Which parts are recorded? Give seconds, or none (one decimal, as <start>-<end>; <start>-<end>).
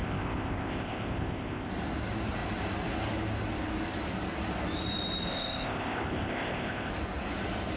1.7-5.3; 6.9-7.8